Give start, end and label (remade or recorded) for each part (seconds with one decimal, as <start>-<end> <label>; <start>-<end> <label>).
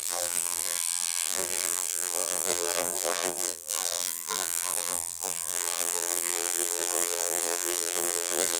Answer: 0.0-8.6 remade